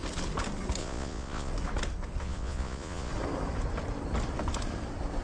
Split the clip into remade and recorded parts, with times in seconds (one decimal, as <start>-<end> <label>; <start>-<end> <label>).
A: 0.0-0.8 recorded; 0.8-1.5 remade; 1.5-2.2 recorded; 2.2-3.1 remade; 3.1-5.2 recorded